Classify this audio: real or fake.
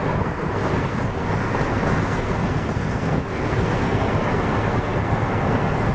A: fake